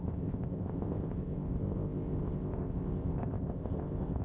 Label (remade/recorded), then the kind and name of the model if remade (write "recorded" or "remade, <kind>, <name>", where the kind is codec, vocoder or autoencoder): remade, codec, ZipCodec